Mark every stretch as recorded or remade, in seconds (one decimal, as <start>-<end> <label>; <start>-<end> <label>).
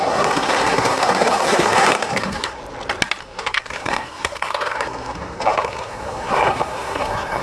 0.0-2.6 remade; 2.6-3.2 recorded; 3.2-7.4 remade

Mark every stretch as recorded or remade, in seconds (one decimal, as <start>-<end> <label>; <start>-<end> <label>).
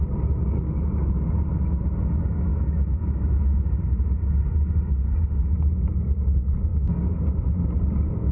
0.0-2.5 recorded; 2.5-3.9 remade; 3.9-8.3 recorded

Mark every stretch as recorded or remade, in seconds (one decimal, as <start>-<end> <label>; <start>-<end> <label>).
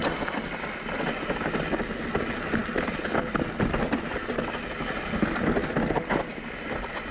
0.0-7.1 recorded